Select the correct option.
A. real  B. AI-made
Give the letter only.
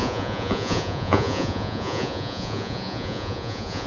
B